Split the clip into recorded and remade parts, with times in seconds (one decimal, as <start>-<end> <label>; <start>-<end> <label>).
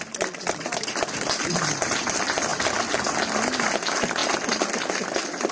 0.0-5.5 recorded